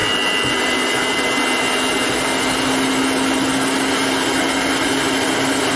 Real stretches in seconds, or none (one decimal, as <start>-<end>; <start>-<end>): 0.0-5.8